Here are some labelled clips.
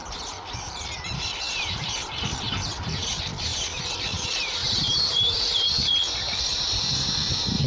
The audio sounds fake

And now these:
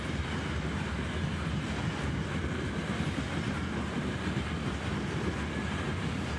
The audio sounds real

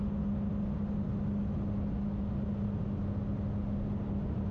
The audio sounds real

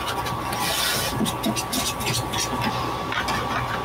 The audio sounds real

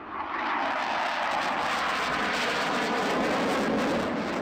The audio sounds real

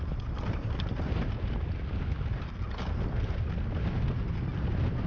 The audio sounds real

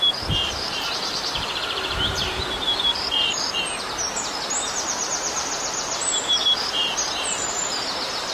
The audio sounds fake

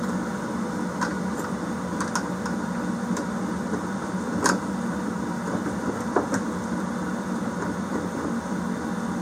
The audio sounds real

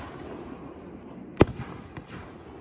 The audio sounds real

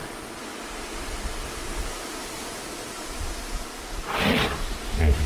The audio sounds real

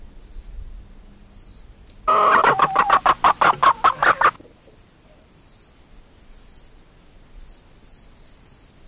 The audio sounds real